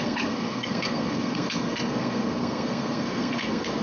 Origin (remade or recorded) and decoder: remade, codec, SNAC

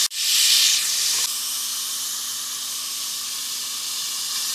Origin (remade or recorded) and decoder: recorded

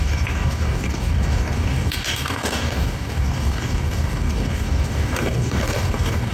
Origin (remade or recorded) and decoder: remade, codec, DAC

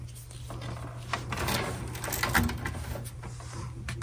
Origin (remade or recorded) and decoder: recorded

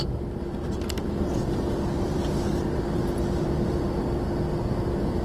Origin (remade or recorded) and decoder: recorded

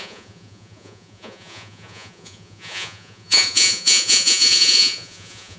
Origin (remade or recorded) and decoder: remade, vocoder, Vocos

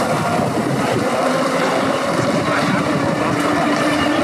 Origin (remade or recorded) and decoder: remade, vocoder, BigVGAN v2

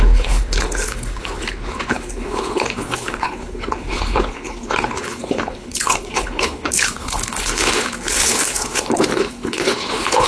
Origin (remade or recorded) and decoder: remade, codec, HILCodec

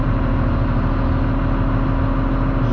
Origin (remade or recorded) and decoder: recorded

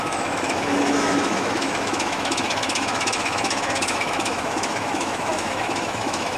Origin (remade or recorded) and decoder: remade, autoencoder, DAC-VAE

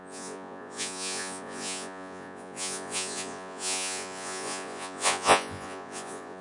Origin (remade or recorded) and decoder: remade, vocoder, Vocos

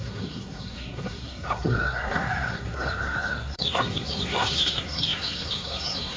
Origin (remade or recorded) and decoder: remade, codec, SNAC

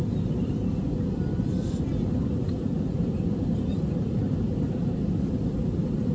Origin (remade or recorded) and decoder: recorded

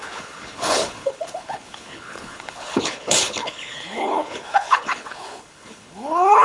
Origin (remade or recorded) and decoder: remade, codec, HILCodec